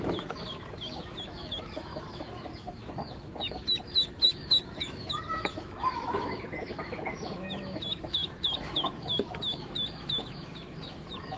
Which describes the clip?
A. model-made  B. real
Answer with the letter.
A